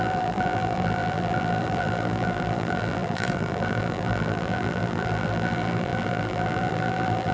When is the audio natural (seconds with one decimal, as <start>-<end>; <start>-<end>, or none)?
none